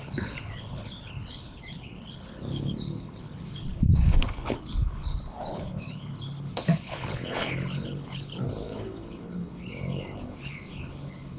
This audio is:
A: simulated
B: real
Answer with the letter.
A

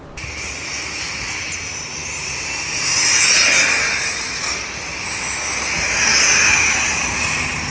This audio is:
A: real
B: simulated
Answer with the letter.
A